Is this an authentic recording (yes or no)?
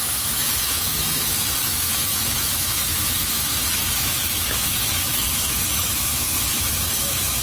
no